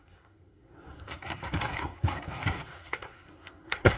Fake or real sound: fake